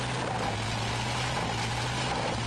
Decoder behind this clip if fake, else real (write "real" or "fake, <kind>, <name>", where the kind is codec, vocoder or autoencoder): real